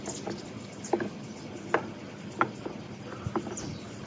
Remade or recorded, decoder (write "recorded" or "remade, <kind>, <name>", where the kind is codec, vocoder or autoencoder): recorded